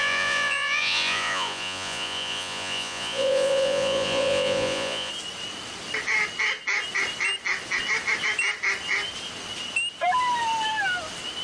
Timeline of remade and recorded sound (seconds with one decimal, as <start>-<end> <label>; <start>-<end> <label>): 0.0-5.1 remade; 5.1-11.4 recorded